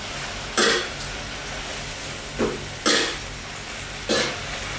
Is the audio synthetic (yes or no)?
no